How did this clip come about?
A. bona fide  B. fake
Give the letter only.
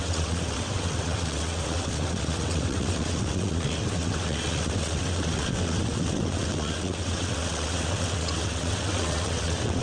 B